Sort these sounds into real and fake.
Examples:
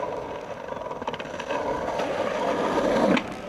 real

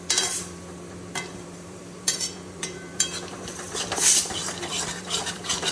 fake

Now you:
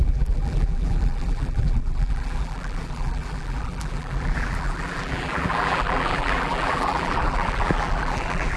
fake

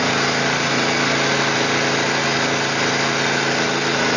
real